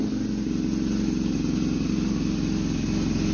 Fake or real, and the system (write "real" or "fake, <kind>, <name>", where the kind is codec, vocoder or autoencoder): real